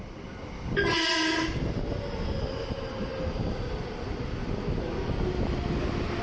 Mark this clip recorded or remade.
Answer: recorded